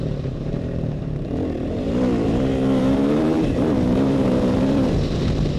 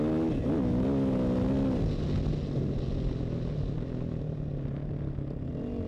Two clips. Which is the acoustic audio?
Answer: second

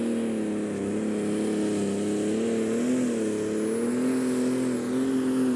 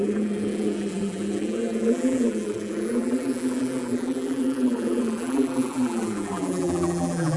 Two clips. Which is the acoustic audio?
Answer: first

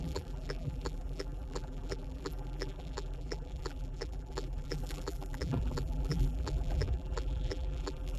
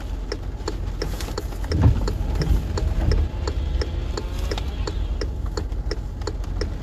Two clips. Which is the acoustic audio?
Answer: second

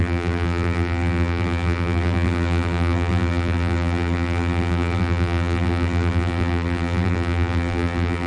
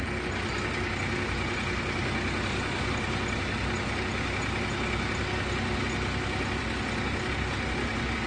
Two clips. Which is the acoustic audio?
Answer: second